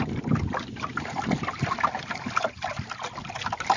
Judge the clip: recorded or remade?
recorded